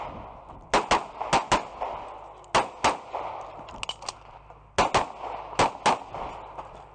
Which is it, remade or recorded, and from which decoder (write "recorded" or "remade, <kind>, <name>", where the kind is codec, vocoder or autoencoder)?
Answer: recorded